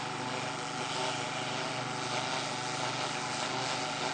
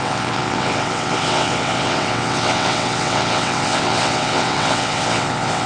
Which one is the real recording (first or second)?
first